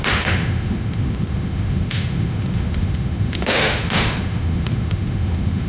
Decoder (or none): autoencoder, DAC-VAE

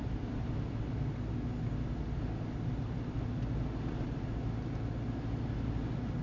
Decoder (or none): none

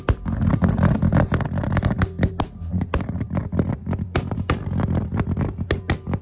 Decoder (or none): none